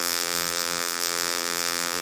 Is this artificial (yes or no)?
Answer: yes